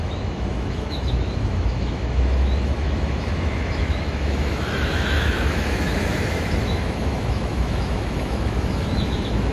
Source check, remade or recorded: remade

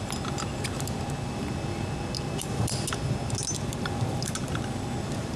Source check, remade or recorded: recorded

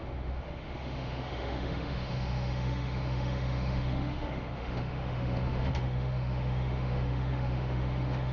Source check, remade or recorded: remade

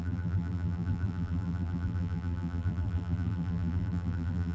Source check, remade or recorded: remade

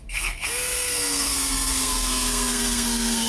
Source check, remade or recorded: remade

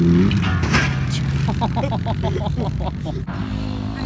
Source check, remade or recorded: recorded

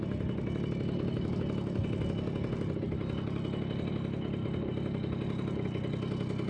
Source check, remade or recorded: recorded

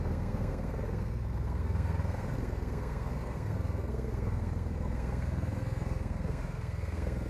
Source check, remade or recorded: remade